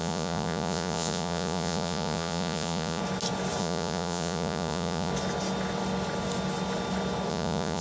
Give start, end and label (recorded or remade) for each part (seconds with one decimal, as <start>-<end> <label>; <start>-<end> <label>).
0.0-3.0 remade; 3.0-3.6 recorded; 3.6-5.1 remade; 5.1-7.3 recorded; 7.3-7.8 remade